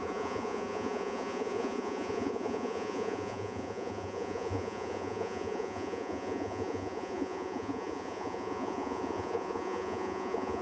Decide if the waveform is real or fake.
fake